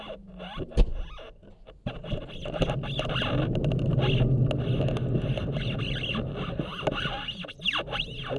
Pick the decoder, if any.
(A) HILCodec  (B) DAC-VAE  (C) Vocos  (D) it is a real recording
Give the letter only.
D